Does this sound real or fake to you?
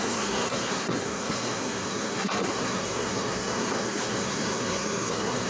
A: fake